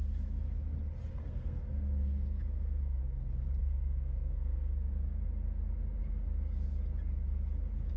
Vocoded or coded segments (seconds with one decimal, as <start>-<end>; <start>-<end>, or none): 1.2-3.0; 3.6-5.2